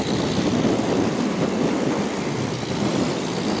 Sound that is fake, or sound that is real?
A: real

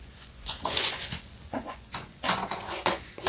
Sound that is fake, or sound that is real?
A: fake